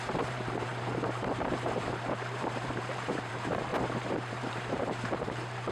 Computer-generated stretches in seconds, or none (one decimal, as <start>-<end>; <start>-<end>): 0.0-5.7